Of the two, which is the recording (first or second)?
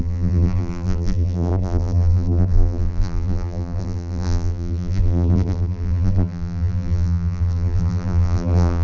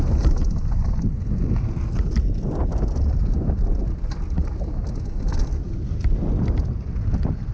second